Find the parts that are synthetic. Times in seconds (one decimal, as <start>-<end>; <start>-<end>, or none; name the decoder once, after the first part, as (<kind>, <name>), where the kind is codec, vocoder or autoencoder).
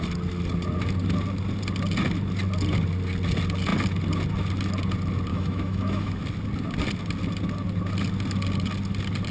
5.3-6.2 (autoencoder, DAC-VAE)